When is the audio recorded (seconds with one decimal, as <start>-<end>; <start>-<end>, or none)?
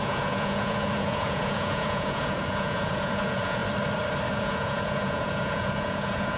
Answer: 3.6-4.3